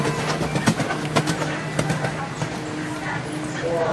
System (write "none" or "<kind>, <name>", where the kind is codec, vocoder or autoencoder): none